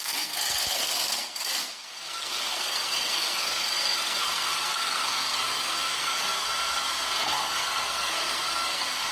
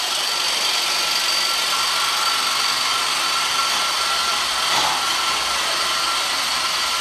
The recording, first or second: second